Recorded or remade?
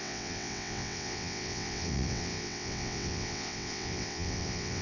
remade